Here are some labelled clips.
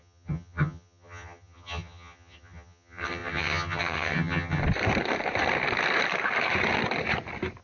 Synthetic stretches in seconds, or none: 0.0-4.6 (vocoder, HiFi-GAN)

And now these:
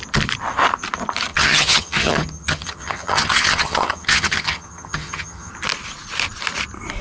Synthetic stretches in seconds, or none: 1.3-5.5 (vocoder, HiFi-GAN)

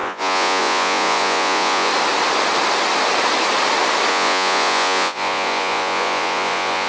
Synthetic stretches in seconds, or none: 0.0-1.9 (vocoder, Vocos); 4.1-6.9

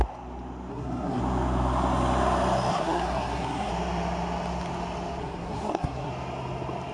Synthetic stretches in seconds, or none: 0.7-1.2 (codec, SNAC); 2.7-3.7; 5.2-6.1

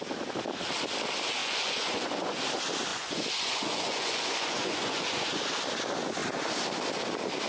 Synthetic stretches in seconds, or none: 1.4-2.4 (vocoder, Vocos); 2.9-5.4

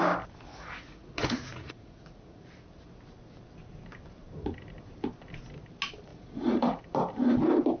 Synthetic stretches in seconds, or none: 0.5-2.4 (vocoder, Vocos); 6.1-6.8

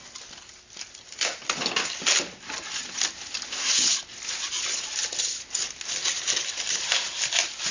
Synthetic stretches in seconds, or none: none

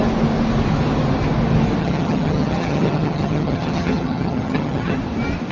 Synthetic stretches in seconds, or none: 1.8-5.0 (vocoder, HiFi-GAN)